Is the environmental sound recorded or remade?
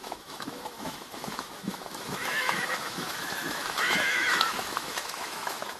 remade